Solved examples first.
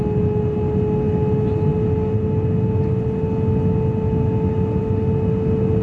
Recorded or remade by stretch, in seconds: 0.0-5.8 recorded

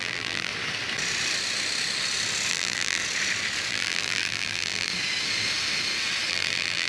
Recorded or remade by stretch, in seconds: 0.0-0.5 remade; 0.5-2.5 recorded; 2.5-3.0 remade; 3.0-3.7 recorded; 3.7-4.9 remade; 4.9-6.3 recorded; 6.3-6.9 remade

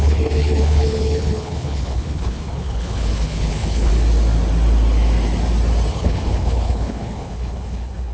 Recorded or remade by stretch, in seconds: 0.0-3.9 remade; 3.9-5.9 recorded; 5.9-8.1 remade